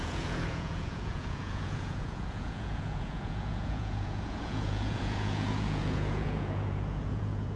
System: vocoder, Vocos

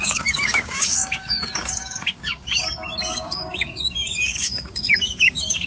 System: codec, DAC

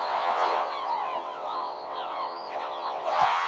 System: vocoder, WaveNeXt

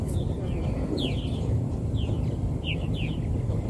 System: vocoder, BigVGAN v2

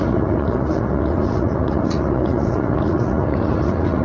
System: vocoder, Vocos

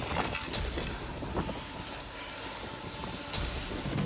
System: none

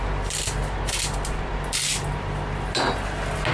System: none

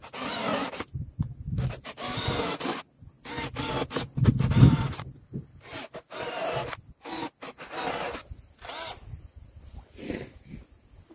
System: none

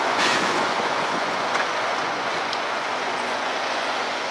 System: vocoder, Vocos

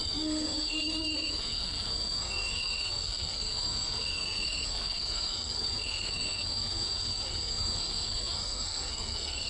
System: codec, SNAC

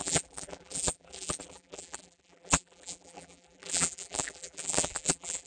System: vocoder, BigVGAN v2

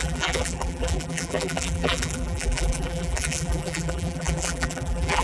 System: vocoder, BigVGAN v2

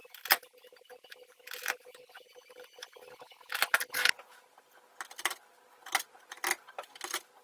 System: none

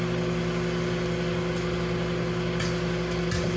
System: none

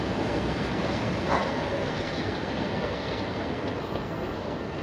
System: codec, SNAC